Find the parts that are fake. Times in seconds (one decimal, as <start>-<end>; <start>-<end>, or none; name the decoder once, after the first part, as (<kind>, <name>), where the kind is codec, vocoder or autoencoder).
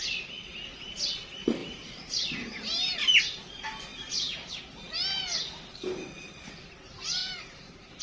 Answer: 1.6-3.2 (vocoder, BigVGAN v2); 3.9-4.6; 7.2-8.0